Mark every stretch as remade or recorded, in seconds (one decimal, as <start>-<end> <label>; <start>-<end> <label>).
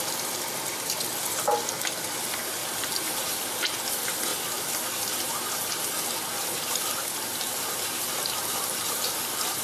0.0-2.6 recorded; 2.6-3.4 remade; 3.4-6.9 recorded; 6.9-8.6 remade; 8.6-9.6 recorded